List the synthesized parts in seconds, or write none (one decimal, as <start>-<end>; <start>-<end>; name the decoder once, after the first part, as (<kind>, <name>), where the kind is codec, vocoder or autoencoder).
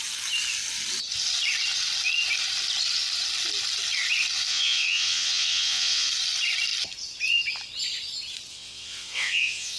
4.5-6.1 (vocoder, WaveNeXt); 8.5-9.8